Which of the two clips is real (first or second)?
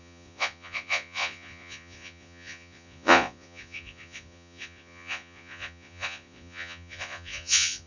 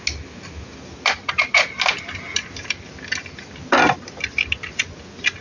second